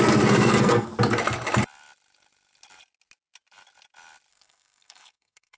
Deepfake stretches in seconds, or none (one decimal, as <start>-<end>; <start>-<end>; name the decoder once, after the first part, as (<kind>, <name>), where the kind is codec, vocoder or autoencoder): 0.0-0.9 (codec, SNAC); 4.3-5.6